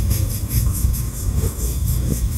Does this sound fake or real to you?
fake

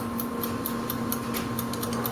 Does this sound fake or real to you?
real